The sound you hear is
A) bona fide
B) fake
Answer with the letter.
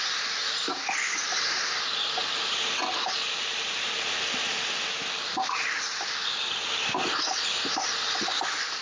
A